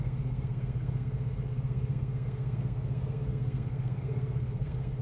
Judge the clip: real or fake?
fake